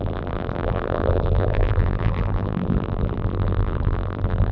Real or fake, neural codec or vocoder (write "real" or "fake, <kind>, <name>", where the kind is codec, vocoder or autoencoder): fake, vocoder, BigVGAN v2